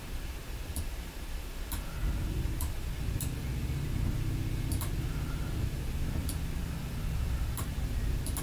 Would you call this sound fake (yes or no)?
yes